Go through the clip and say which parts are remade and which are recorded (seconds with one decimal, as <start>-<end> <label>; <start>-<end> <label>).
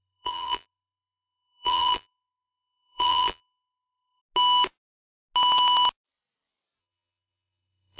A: 0.0-4.2 remade; 4.2-6.8 recorded; 6.8-8.0 remade